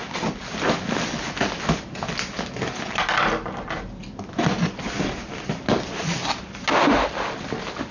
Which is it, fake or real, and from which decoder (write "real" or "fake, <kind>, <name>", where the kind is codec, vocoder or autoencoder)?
real